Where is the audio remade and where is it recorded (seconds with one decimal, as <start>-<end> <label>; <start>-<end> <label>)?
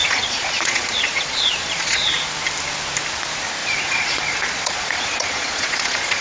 0.0-2.1 remade; 2.1-3.6 recorded; 3.6-6.2 remade